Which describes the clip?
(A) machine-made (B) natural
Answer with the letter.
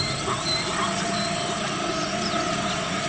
B